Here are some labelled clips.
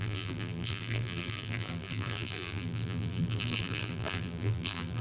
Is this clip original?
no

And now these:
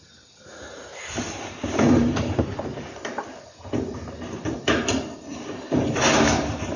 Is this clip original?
no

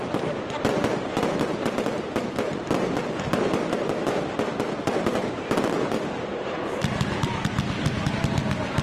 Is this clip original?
yes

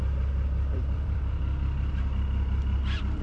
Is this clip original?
no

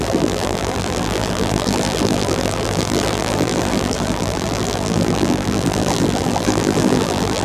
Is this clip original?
no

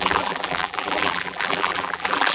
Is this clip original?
no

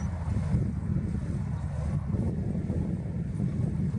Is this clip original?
yes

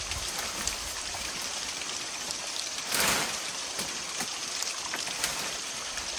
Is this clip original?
no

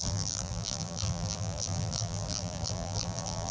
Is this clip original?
no